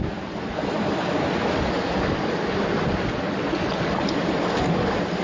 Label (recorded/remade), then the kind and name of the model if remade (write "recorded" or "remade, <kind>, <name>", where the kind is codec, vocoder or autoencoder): recorded